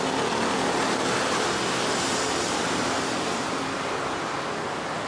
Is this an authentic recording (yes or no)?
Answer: yes